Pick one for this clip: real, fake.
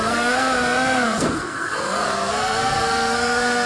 fake